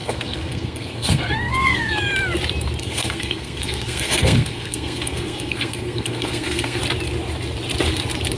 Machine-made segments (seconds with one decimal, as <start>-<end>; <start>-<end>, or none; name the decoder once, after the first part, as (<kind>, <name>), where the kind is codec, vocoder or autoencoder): 0.0-1.9 (codec, SNAC); 2.8-6.8